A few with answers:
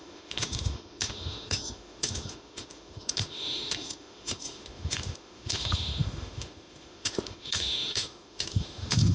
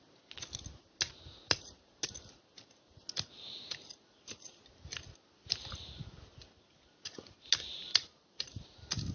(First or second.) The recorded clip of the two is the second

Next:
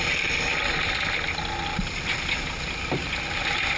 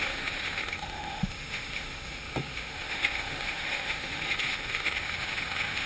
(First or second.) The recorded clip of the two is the first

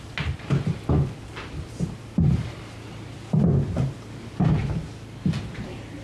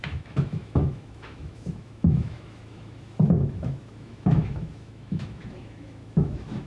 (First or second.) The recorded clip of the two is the first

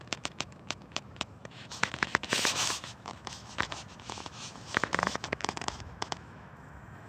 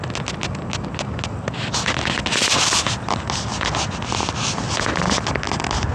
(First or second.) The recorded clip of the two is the second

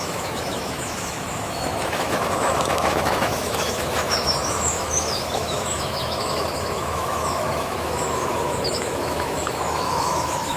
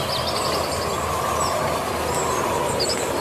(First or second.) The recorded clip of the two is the second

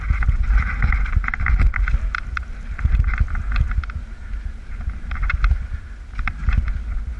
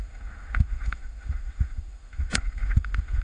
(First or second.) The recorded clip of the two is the first